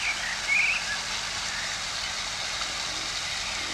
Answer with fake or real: real